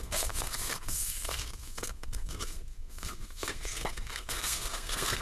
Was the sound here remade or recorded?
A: remade